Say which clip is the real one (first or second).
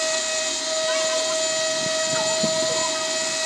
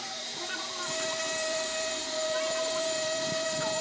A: first